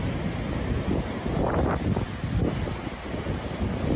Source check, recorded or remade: recorded